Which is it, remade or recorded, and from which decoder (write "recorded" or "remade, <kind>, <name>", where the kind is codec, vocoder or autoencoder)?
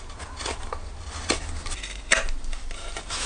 recorded